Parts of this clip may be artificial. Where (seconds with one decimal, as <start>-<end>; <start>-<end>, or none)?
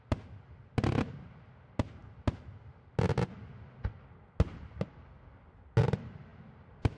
none